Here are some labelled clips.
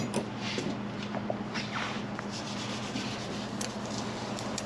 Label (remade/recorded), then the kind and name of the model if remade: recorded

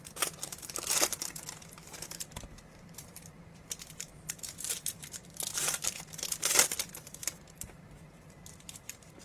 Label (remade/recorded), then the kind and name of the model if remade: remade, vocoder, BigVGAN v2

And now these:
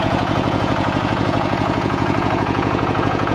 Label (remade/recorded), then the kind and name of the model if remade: remade, vocoder, Vocos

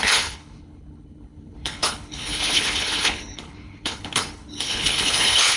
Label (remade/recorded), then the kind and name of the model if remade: remade, codec, HILCodec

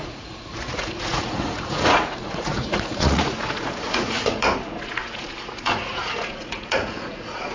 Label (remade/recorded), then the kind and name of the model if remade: remade, vocoder, Vocos